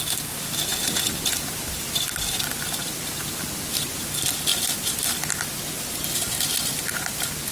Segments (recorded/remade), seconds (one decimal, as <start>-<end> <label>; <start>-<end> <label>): 0.0-7.5 recorded